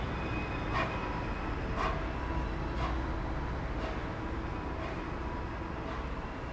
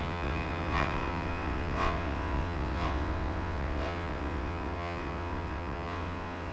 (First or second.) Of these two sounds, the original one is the first